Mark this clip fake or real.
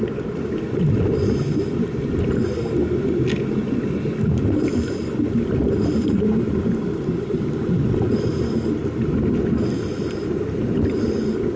real